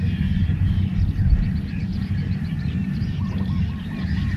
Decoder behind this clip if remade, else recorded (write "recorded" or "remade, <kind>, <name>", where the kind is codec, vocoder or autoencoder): recorded